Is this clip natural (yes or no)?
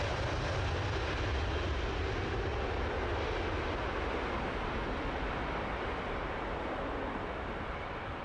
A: yes